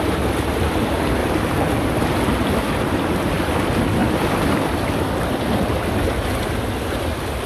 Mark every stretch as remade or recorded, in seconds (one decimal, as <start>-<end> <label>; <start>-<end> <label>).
0.0-1.2 recorded; 1.2-2.8 remade; 2.8-4.0 recorded; 4.0-4.7 remade; 4.7-7.5 recorded